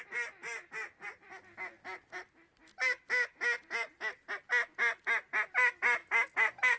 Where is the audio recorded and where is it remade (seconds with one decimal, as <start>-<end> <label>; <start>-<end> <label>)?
0.0-6.8 recorded